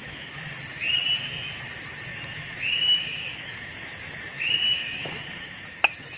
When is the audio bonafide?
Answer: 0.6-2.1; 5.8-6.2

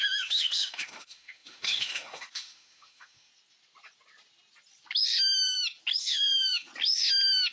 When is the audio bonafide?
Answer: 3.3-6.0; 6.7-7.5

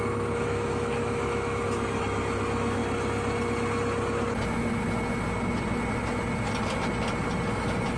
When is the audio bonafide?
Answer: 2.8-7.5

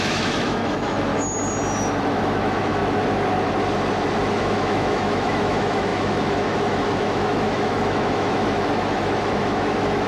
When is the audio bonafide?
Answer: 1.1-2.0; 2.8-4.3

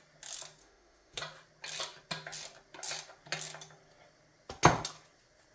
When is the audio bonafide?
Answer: 0.0-0.6; 1.2-5.5

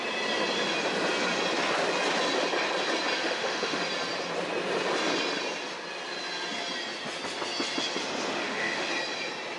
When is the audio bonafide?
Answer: 0.0-3.2; 3.8-8.4; 8.9-9.6